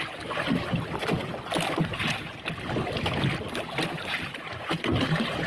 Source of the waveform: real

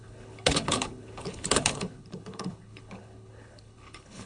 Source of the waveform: fake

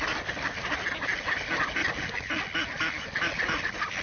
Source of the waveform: real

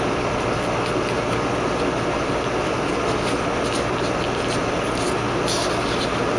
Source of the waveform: real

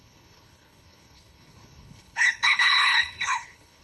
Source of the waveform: fake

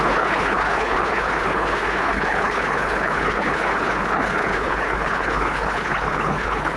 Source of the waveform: fake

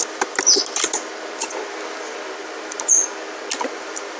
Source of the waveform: real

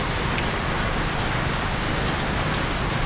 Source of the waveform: real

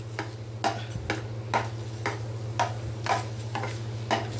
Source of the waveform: real